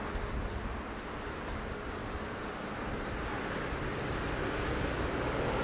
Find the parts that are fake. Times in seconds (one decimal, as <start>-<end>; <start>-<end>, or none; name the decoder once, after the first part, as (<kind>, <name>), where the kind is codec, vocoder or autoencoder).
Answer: none